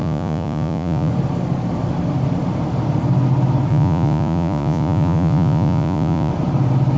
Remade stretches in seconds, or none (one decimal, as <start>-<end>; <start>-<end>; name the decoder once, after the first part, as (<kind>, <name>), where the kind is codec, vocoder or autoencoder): 0.0-1.1 (vocoder, Vocos); 3.7-6.3